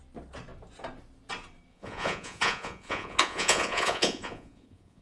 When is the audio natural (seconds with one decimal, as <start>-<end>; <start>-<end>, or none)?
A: 0.0-1.7